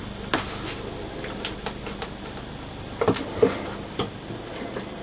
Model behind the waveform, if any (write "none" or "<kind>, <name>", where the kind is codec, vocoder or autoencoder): none